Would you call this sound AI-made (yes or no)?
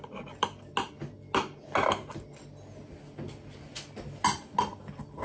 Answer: no